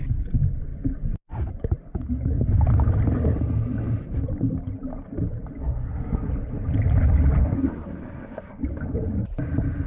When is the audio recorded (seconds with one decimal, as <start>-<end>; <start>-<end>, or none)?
0.0-5.6; 6.3-7.4; 8.6-9.9